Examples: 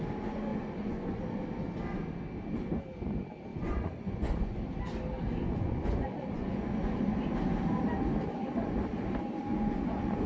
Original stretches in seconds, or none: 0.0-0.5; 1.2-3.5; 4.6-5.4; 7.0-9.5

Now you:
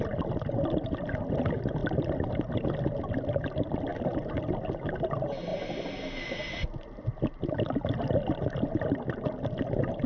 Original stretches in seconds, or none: 0.0-10.1

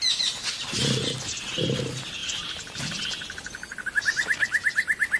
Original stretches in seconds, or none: 0.0-5.2

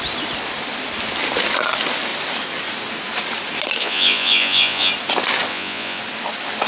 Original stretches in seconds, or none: 0.0-3.8; 4.9-5.5; 6.0-6.7

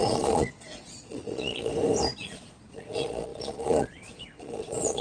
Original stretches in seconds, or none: 1.7-2.2

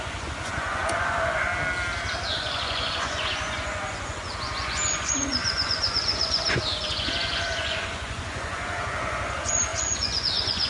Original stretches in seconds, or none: 1.5-2.3